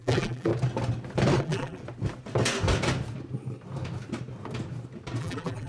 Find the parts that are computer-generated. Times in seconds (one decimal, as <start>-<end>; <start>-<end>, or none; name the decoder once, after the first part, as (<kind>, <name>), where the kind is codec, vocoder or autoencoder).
0.0-0.5 (vocoder, BigVGAN v2); 1.4-1.8; 5.2-5.7